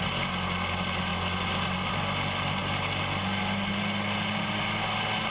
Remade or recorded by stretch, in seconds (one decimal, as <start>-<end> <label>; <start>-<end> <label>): 0.0-5.3 recorded